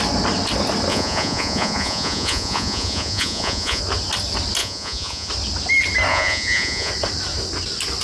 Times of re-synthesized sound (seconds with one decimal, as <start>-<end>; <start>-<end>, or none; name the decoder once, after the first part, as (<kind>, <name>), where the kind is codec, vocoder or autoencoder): 0.9-3.8 (vocoder, Vocos); 4.6-5.3; 6.1-6.9